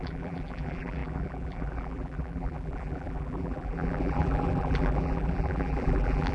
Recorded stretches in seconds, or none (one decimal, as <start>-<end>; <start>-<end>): none